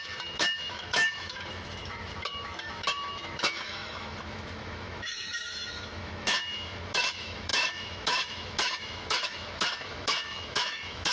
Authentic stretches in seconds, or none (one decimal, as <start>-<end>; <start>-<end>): none